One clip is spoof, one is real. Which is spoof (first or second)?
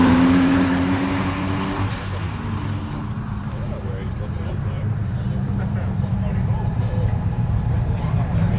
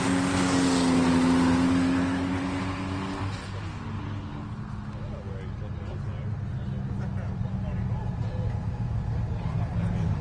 first